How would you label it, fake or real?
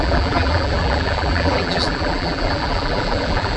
fake